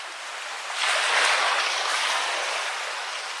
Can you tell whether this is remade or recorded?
recorded